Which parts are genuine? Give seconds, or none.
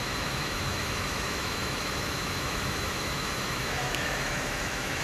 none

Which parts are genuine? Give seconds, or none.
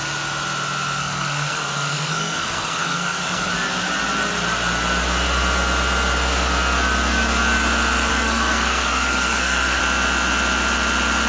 0.0-1.0; 3.5-8.1; 9.8-11.3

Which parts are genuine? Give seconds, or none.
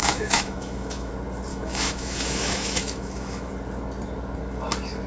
1.1-1.5; 3.5-5.1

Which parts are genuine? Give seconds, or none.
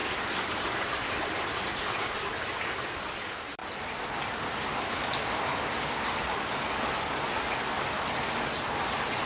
0.0-9.3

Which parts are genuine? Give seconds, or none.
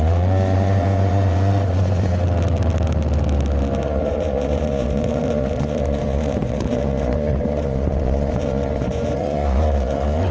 2.1-3.8